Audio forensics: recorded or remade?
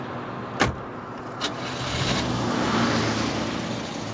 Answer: recorded